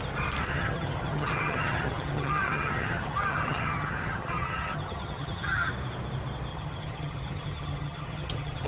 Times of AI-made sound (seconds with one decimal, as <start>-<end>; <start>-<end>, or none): 0.5-5.7; 6.5-8.7